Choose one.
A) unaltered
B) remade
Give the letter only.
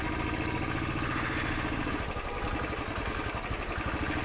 A